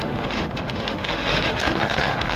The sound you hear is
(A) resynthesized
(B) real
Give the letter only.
A